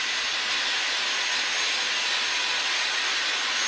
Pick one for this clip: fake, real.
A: real